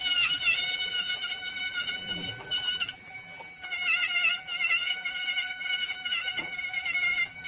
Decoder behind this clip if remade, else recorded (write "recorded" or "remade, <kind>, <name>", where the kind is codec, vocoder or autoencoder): remade, vocoder, BigVGAN v2